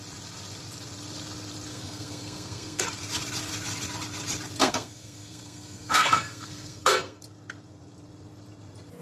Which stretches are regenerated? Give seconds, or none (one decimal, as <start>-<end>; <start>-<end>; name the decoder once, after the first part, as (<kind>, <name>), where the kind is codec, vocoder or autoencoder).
1.7-2.8 (codec, SNAC); 4.6-7.2